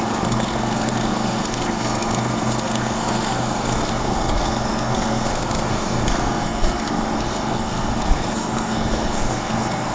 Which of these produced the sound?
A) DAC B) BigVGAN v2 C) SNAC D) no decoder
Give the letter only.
C